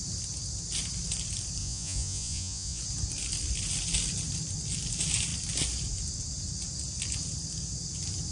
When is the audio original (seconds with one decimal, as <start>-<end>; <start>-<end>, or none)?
0.0-1.6; 2.8-8.3